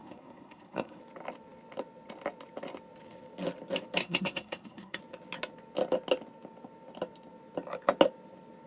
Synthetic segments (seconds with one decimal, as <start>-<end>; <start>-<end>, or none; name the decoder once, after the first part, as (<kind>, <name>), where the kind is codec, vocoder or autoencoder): 0.0-1.0 (codec, SNAC); 4.0-5.0